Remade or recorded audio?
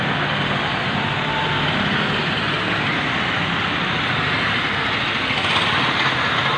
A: recorded